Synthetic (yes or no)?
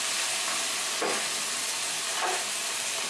no